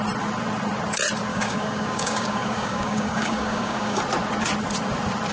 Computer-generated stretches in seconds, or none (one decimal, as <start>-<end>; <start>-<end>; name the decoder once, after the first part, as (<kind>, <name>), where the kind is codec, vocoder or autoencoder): 1.3-4.0 (codec, DAC)